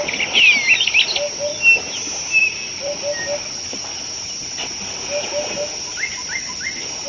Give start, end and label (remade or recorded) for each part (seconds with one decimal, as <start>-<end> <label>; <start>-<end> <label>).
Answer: 0.0-2.4 recorded; 2.4-3.0 remade; 3.0-7.1 recorded